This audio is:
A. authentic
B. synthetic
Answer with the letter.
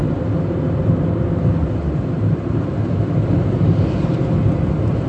A